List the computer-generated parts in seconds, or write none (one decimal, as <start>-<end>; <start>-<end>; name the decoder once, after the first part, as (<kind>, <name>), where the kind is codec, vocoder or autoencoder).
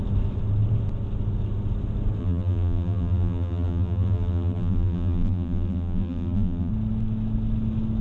2.2-6.7 (vocoder, BigVGAN v2)